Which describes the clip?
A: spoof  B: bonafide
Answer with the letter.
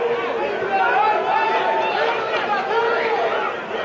B